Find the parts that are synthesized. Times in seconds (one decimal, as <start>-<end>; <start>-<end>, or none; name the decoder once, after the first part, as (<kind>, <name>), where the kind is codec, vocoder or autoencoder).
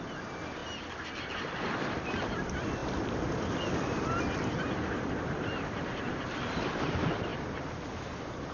0.6-1.1 (vocoder, BigVGAN v2); 2.8-6.2